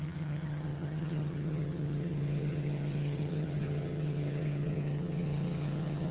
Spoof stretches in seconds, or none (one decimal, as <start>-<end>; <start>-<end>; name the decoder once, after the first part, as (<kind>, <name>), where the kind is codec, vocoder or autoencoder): 0.0-6.1 (vocoder, HiFi-GAN)